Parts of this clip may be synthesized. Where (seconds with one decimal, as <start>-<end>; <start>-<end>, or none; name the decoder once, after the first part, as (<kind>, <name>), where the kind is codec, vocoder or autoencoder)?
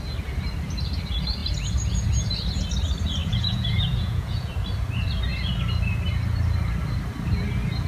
3.2-4.5 (vocoder, Vocos)